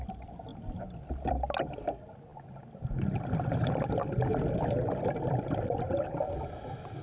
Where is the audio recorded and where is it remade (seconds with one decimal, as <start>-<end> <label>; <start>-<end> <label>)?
0.0-7.0 recorded